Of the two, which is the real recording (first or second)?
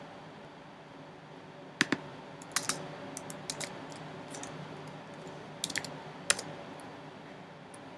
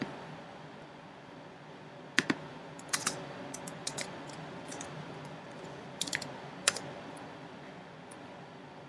first